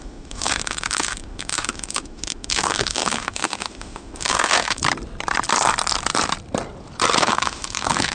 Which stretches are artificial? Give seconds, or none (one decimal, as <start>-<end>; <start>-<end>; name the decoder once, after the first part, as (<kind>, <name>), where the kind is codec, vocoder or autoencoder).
0.0-4.8 (autoencoder, DAC-VAE); 7.2-8.1